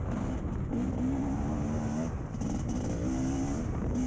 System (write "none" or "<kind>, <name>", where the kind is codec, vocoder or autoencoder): none